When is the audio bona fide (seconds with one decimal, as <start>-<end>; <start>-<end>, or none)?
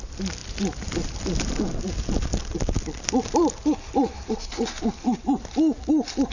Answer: 0.0-6.3